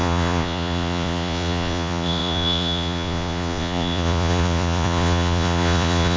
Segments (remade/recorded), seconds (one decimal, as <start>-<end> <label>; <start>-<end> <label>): 0.0-6.2 remade